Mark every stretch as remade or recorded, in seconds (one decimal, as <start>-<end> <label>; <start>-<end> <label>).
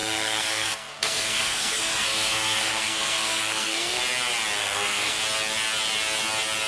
0.0-4.0 remade; 4.0-4.6 recorded; 4.6-5.2 remade; 5.2-6.7 recorded